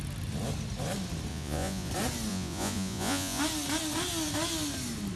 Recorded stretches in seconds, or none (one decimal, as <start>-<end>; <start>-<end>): 0.0-1.3; 1.9-2.3; 3.4-5.2